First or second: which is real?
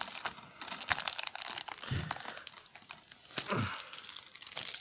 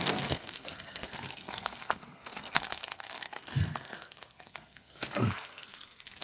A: first